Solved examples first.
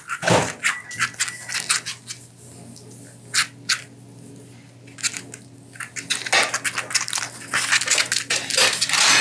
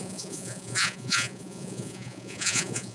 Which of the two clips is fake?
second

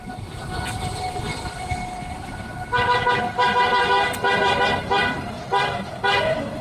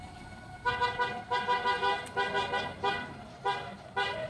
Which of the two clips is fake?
first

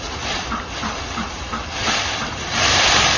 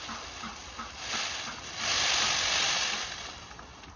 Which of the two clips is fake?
first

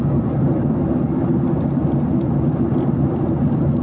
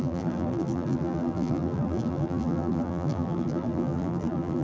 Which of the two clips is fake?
second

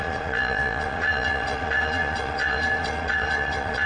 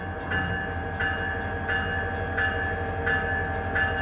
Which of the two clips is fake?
first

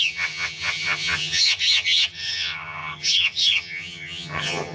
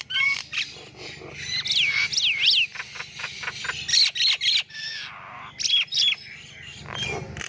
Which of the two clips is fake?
first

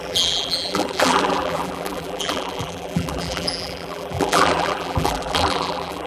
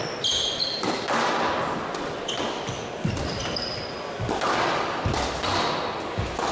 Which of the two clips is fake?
first